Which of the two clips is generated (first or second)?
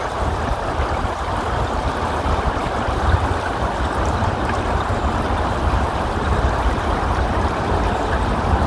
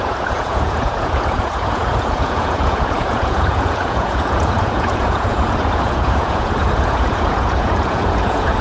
second